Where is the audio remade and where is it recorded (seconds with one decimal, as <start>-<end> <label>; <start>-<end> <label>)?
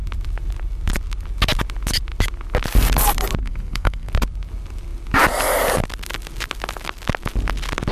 0.0-3.4 recorded; 3.4-4.1 remade; 4.1-7.9 recorded